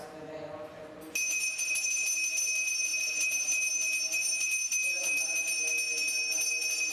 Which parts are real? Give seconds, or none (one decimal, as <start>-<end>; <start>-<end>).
0.0-6.9